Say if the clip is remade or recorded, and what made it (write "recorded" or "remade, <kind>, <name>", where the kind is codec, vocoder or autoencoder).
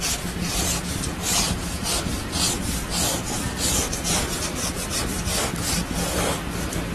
recorded